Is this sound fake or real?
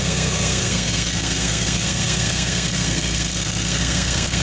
fake